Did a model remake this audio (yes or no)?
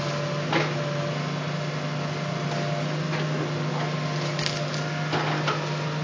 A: no